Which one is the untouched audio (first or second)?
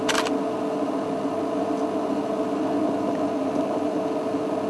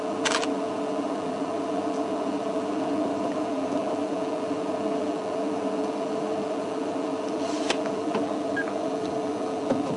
first